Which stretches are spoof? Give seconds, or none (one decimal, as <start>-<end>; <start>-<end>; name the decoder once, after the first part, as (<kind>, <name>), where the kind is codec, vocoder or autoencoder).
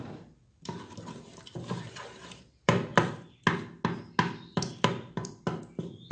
0.0-2.9 (vocoder, BigVGAN v2); 4.6-6.1